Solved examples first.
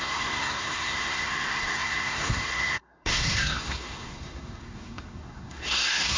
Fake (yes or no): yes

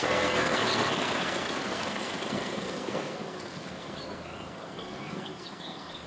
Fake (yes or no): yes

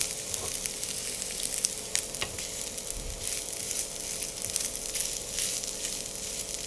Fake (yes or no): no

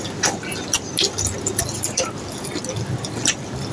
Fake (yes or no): no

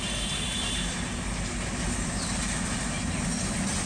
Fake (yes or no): no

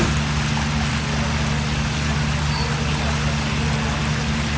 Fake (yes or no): no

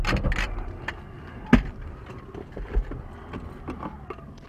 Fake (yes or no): no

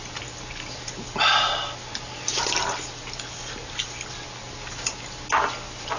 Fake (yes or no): no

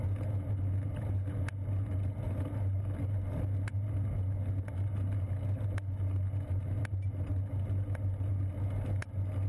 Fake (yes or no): no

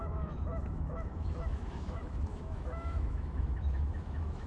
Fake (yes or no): yes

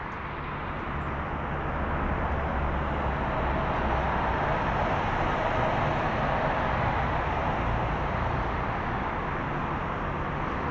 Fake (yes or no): no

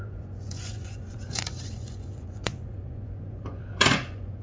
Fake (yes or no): yes